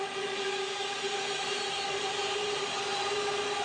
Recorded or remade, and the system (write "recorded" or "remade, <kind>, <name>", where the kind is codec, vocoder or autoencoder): recorded